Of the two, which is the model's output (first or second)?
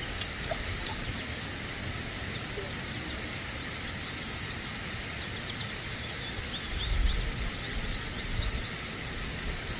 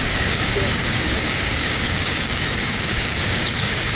second